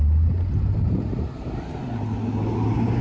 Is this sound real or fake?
real